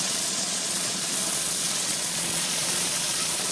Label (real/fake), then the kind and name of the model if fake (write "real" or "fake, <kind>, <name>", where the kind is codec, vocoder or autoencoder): fake, vocoder, Vocos